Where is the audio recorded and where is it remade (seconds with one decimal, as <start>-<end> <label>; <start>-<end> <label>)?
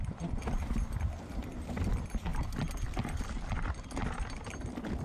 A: 0.0-5.0 recorded